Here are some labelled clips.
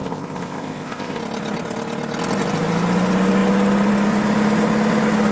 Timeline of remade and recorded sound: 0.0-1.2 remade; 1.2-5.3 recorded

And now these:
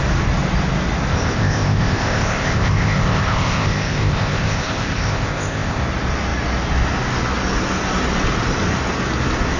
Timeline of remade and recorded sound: 0.0-1.1 recorded; 1.1-5.8 remade; 5.8-9.6 recorded

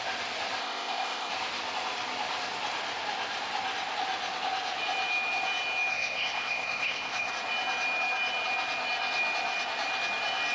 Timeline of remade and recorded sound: 0.0-0.6 recorded; 0.6-1.3 remade; 1.3-5.9 recorded; 5.9-7.3 remade; 7.3-10.5 recorded

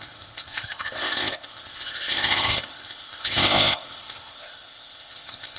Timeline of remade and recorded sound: 0.0-5.6 remade

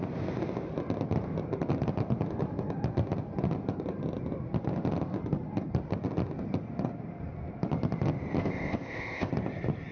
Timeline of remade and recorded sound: 0.0-8.4 recorded; 8.4-9.3 remade; 9.3-9.9 recorded

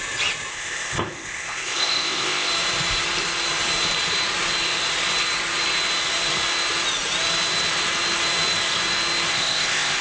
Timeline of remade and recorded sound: 0.0-0.5 recorded; 0.5-2.5 remade; 2.5-9.3 recorded; 9.3-10.0 remade